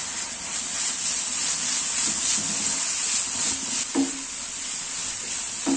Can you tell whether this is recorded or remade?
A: recorded